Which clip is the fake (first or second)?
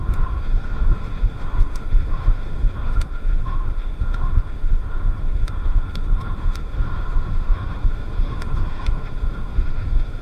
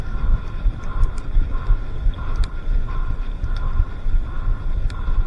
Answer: first